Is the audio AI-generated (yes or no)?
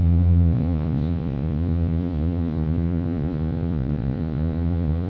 yes